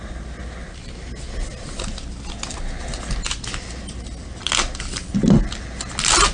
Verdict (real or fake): real